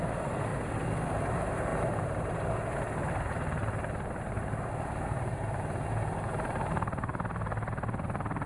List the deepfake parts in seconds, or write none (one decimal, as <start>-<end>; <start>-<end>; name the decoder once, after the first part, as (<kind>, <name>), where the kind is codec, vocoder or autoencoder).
0.0-0.5 (vocoder, BigVGAN v2); 1.1-1.7; 3.1-7.1; 7.7-8.5